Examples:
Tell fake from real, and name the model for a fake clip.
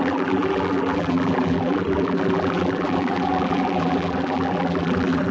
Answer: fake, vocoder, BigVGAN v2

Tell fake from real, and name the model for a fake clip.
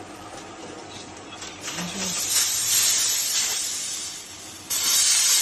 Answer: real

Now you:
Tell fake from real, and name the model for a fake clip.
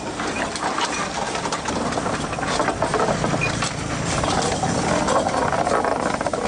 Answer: real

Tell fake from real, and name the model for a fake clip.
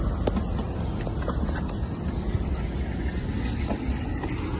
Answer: real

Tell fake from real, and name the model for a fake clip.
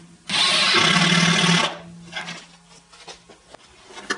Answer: real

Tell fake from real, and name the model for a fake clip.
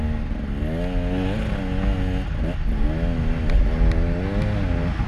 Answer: real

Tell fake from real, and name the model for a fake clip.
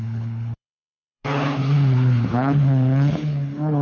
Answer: fake, codec, HILCodec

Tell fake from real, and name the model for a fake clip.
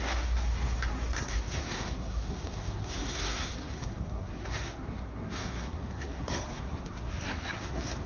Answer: fake, codec, SNAC